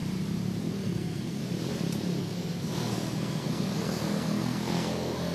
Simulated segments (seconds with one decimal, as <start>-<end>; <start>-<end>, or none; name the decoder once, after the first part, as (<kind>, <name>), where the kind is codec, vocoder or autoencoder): 0.6-1.4 (codec, SNAC); 2.2-5.3